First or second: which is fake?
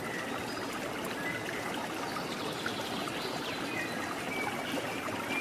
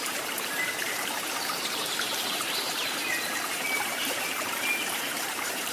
second